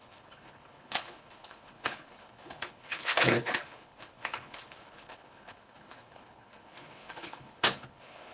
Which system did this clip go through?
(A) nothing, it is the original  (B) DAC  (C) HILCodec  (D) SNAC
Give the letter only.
C